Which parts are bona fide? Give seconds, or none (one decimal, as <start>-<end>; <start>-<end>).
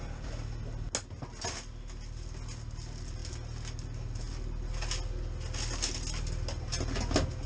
0.0-7.5